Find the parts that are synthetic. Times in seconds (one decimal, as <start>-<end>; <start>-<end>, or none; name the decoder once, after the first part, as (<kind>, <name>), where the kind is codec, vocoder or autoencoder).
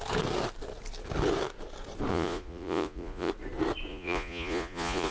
2.1-3.3 (vocoder, Vocos); 3.9-5.1